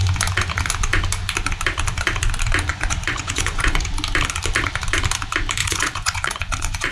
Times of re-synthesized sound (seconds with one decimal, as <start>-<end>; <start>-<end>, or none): 2.7-3.9; 5.6-6.9